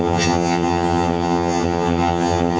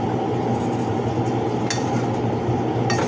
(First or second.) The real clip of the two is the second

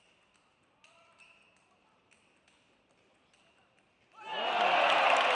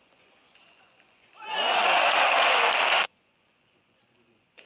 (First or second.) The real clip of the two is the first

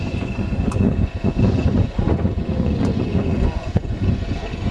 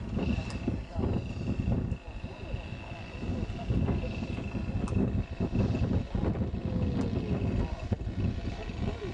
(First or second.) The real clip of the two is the second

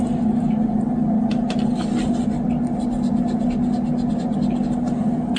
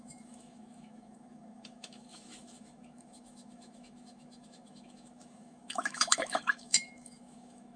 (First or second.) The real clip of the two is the first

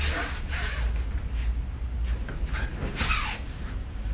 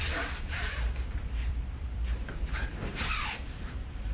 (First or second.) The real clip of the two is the first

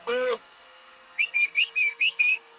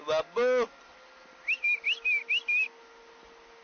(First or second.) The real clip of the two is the second